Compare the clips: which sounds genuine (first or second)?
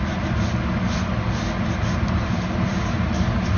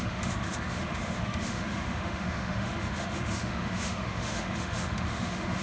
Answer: first